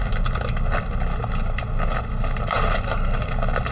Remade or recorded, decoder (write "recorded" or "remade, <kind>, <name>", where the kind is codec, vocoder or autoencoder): recorded